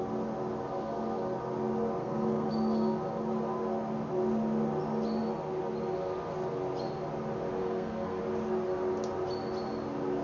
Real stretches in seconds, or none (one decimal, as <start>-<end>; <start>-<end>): 0.0-2.0; 2.5-7.6; 8.2-10.2